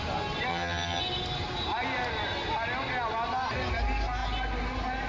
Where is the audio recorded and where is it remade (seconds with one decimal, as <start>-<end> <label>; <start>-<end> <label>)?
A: 0.0-0.5 recorded; 0.5-1.0 remade; 1.0-5.1 recorded